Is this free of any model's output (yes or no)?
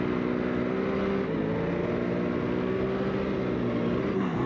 yes